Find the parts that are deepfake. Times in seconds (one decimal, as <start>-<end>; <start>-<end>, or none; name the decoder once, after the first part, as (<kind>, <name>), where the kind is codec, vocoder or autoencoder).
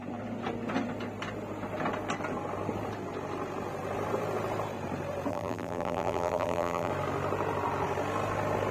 5.3-6.9 (vocoder, BigVGAN v2)